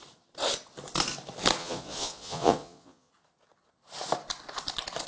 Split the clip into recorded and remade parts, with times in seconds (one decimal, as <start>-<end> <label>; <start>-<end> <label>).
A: 0.0-1.6 recorded; 1.6-3.1 remade; 3.1-5.1 recorded